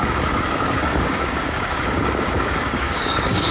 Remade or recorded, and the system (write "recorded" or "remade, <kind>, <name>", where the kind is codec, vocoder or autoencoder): remade, codec, DAC